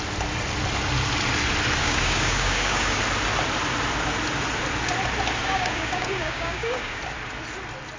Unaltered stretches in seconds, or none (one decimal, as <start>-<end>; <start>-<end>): 0.0-1.8; 3.0-5.4; 7.0-8.0